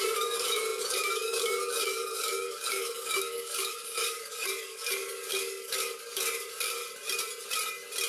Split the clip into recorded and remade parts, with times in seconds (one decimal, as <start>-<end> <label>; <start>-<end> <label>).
0.0-6.8 remade; 6.8-8.1 recorded